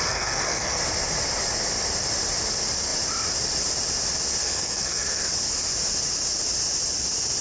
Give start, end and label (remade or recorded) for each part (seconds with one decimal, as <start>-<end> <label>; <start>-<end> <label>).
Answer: 0.0-0.8 remade; 0.8-4.4 recorded; 4.4-5.2 remade; 5.2-7.4 recorded